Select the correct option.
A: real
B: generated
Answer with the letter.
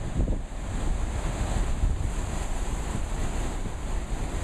A